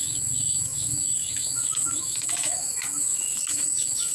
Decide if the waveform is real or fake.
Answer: fake